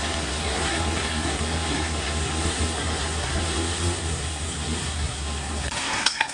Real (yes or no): no